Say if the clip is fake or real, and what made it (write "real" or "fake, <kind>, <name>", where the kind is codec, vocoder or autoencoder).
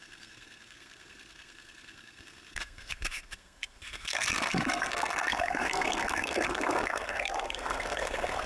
fake, codec, SNAC